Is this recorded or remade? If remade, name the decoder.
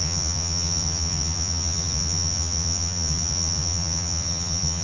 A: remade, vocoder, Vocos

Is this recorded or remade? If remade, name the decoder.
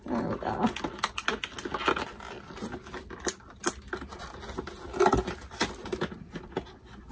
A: recorded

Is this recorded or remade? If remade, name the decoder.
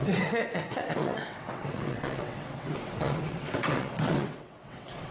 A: remade, vocoder, WaveNeXt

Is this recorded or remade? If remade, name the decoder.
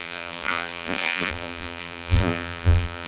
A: remade, vocoder, BigVGAN v2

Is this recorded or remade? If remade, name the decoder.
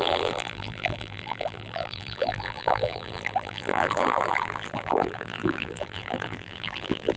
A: remade, vocoder, BigVGAN v2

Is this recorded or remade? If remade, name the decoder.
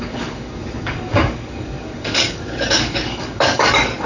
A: remade, codec, DAC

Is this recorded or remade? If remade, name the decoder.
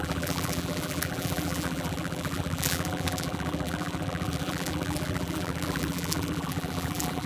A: remade, vocoder, BigVGAN v2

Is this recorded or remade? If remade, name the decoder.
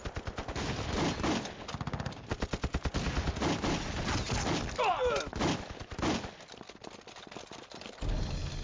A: recorded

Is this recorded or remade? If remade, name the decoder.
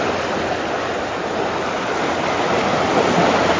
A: recorded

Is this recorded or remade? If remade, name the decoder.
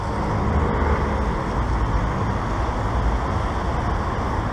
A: recorded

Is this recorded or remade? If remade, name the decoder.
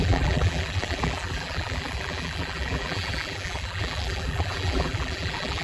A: remade, vocoder, BigVGAN v2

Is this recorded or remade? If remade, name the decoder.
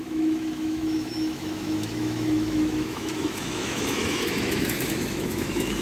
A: remade, autoencoder, DAC-VAE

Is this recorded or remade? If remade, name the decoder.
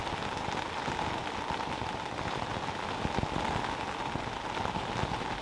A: recorded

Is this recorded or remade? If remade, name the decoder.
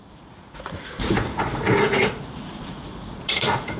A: remade, vocoder, Vocos